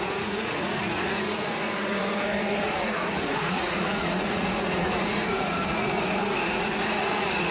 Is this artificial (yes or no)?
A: yes